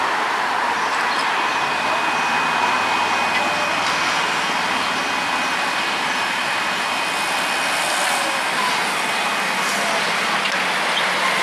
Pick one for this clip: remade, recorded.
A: recorded